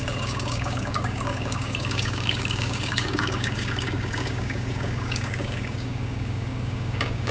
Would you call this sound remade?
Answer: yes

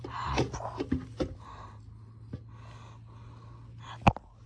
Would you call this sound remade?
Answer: no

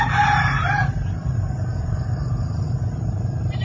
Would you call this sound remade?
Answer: yes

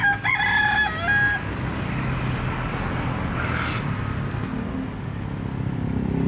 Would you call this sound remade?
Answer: no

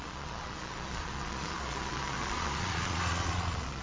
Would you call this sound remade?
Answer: yes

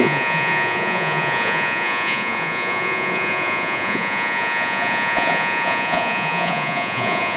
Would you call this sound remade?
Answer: yes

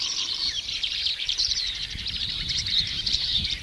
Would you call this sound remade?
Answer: yes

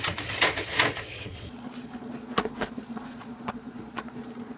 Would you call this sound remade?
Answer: yes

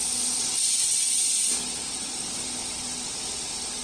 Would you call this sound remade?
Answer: no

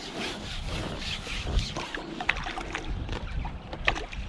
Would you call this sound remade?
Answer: no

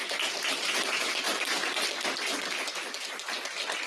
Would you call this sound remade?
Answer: no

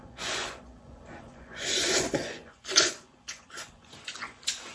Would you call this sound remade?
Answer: yes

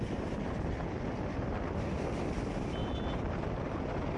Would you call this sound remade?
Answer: no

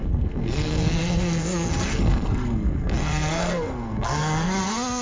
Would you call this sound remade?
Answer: yes